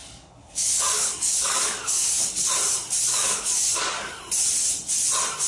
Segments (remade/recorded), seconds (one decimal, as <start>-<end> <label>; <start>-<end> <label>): 0.0-2.5 remade; 2.5-3.1 recorded; 3.1-4.2 remade; 4.2-5.5 recorded